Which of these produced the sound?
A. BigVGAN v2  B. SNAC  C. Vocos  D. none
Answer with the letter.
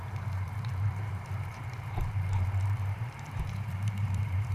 A